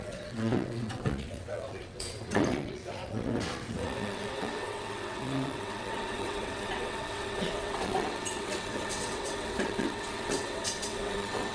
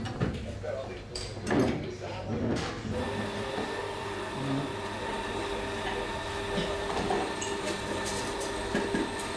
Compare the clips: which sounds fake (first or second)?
first